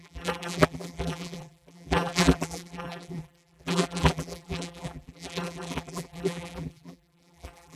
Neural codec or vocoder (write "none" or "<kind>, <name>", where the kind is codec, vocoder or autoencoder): vocoder, BigVGAN v2